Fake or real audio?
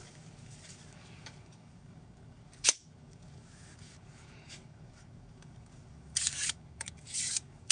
fake